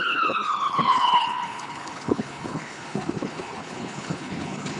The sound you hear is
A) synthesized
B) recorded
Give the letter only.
A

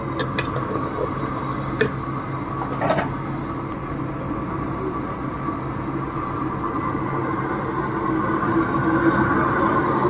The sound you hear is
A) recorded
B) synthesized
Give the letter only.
A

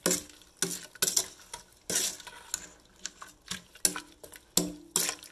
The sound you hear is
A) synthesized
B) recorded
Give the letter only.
B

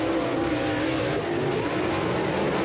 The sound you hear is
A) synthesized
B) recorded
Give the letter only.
B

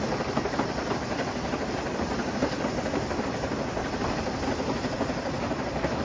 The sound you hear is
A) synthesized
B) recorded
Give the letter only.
B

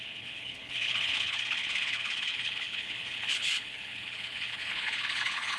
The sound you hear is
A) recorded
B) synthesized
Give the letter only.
B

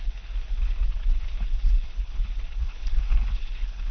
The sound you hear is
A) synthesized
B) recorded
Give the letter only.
A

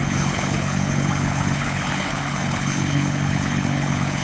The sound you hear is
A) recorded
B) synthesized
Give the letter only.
B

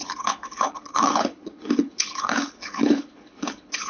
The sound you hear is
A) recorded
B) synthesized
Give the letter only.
B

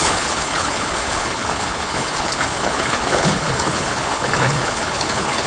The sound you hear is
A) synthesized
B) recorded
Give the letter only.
A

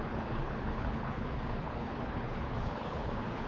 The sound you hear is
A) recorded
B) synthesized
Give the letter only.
B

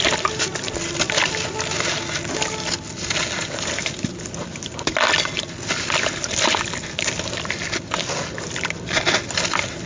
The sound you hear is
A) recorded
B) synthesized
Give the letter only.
A